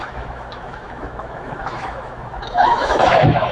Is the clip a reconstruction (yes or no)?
yes